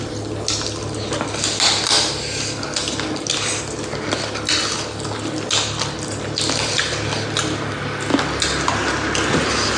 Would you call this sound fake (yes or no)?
no